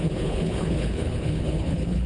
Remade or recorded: remade